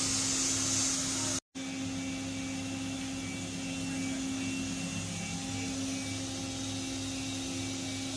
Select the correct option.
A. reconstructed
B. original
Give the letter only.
B